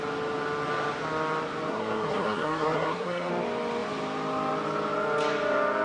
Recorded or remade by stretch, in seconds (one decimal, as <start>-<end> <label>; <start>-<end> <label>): 0.0-1.7 recorded; 1.7-3.3 remade; 3.3-5.8 recorded